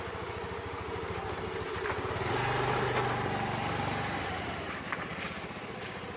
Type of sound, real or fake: real